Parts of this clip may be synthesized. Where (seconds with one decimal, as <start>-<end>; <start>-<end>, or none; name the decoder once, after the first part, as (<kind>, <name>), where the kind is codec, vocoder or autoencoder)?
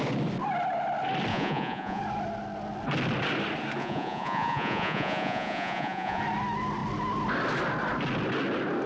1.3-2.0 (vocoder, Vocos); 3.8-6.2